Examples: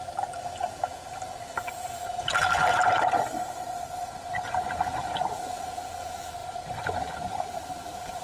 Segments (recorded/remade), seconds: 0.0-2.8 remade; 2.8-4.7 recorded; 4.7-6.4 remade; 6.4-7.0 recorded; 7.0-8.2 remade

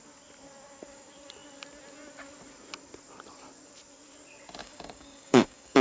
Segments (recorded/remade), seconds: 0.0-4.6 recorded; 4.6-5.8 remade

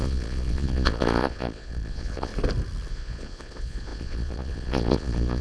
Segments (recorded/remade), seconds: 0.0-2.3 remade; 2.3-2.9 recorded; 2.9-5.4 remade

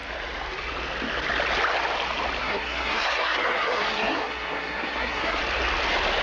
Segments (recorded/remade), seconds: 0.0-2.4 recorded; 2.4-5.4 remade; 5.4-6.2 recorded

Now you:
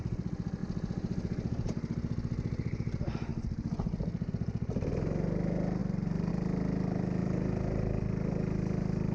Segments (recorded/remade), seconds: 0.0-0.6 recorded; 0.6-1.7 remade; 1.7-7.2 recorded; 7.2-8.0 remade; 8.0-9.1 recorded

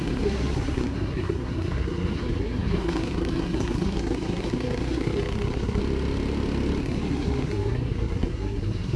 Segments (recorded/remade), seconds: 0.0-5.8 remade; 5.8-6.8 recorded; 6.8-9.0 remade

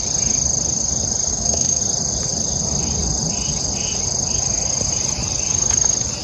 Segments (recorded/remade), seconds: 0.0-1.3 recorded; 1.3-1.8 remade; 1.8-6.2 recorded